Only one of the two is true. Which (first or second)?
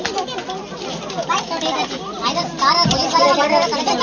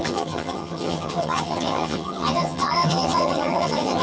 first